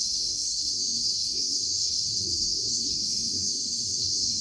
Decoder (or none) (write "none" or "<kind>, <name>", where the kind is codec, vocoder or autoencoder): codec, SNAC